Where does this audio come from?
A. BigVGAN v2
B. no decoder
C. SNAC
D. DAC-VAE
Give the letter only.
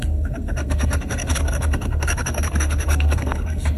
C